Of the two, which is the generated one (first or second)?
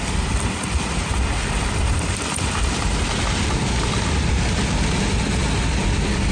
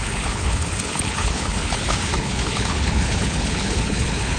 second